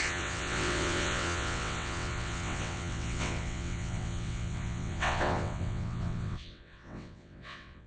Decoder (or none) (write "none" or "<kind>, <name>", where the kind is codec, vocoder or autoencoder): vocoder, WaveNeXt